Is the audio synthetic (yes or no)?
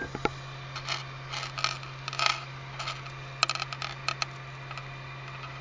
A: no